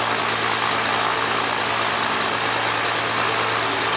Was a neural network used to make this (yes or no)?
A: no